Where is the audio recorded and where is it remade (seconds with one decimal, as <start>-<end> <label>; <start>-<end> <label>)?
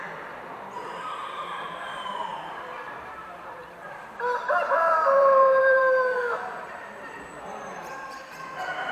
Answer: 0.0-8.9 remade